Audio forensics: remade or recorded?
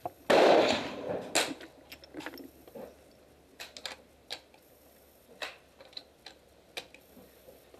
recorded